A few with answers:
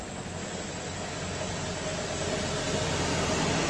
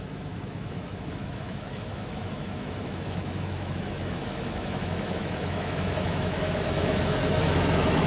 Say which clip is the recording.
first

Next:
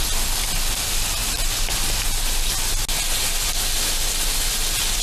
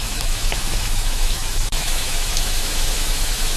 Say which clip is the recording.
first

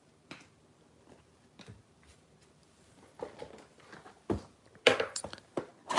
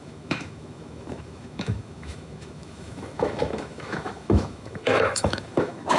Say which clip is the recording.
first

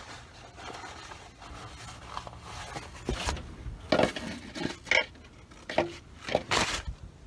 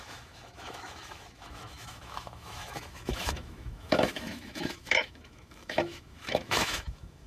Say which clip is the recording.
first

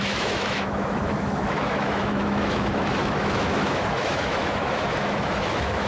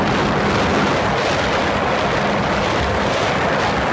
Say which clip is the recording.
second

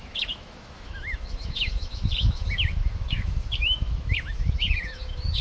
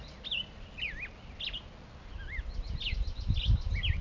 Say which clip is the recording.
second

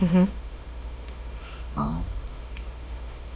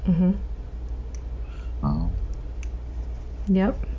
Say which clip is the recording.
second